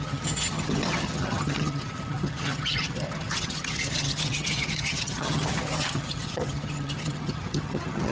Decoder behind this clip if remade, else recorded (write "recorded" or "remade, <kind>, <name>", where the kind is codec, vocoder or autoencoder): remade, vocoder, HiFi-GAN